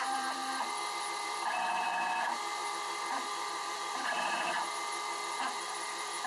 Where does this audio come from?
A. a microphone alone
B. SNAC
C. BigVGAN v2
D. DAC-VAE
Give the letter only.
C